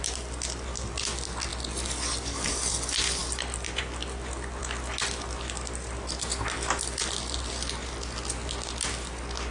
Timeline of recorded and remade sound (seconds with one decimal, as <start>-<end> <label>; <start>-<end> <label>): 0.0-9.5 recorded